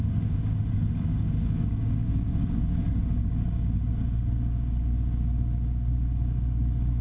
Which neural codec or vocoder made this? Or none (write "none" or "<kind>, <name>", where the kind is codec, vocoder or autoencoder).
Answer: codec, DAC